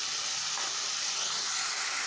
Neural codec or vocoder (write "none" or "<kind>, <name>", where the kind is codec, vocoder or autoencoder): none